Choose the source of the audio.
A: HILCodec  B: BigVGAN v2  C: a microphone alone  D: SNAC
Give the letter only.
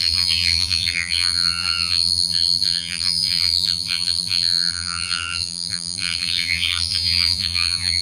B